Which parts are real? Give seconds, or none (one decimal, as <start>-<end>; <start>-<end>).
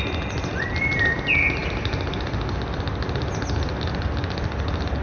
0.0-5.0